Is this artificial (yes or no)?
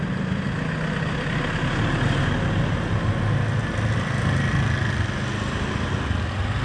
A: no